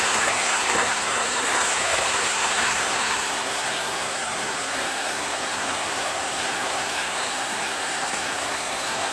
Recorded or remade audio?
remade